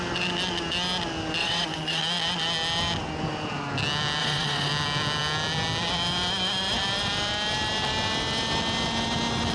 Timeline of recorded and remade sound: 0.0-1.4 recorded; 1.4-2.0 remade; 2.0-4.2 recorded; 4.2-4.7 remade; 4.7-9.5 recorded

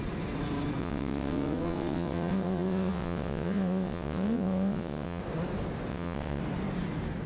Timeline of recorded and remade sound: 0.0-0.8 recorded; 0.8-5.2 remade; 5.2-5.9 recorded; 5.9-6.4 remade; 6.4-7.3 recorded

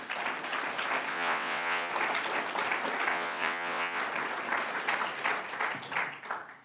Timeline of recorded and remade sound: 0.0-1.1 recorded; 1.1-1.9 remade; 1.9-3.1 recorded; 3.1-4.0 remade; 4.0-6.6 recorded

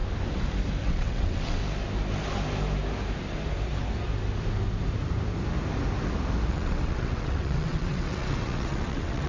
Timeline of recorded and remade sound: 0.0-0.8 recorded; 0.8-1.6 remade; 1.6-6.5 recorded; 6.5-9.3 remade

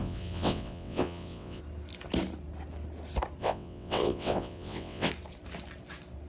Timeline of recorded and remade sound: 0.0-1.6 remade; 1.6-3.4 recorded; 3.4-5.1 remade; 5.1-6.3 recorded

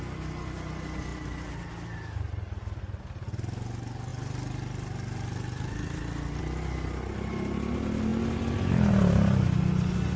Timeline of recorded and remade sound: 0.0-10.2 recorded

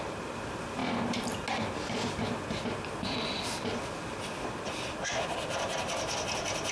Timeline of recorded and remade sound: 0.0-6.7 recorded